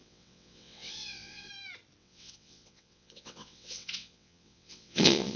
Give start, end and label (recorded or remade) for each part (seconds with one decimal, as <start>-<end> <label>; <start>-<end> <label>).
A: 0.0-1.5 remade; 1.5-2.0 recorded; 2.0-5.4 remade